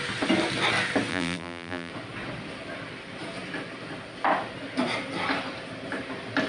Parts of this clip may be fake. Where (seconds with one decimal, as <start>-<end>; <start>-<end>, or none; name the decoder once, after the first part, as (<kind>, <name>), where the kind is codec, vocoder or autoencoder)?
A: 1.1-1.9 (vocoder, BigVGAN v2)